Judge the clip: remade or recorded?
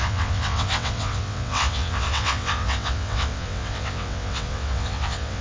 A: remade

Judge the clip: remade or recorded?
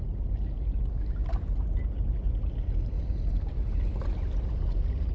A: recorded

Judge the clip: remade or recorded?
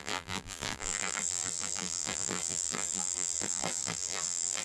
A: remade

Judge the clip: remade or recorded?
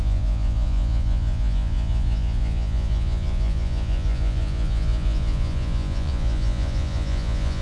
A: remade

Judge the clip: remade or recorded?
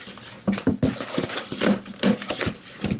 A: recorded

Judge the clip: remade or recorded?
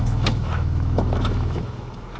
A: remade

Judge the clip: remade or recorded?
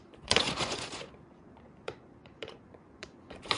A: remade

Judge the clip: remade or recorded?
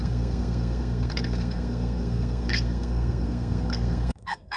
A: remade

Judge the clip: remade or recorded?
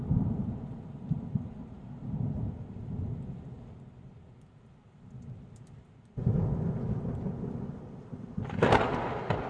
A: recorded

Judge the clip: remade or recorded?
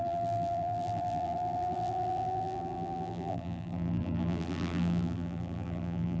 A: remade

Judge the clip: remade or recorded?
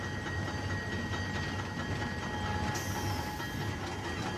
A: recorded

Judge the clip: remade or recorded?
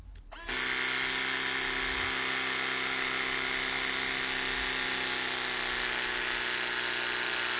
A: recorded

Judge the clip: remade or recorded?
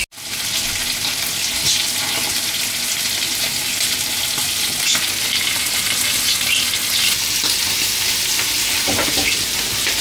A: recorded